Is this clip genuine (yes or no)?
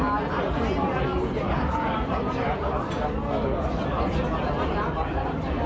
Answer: yes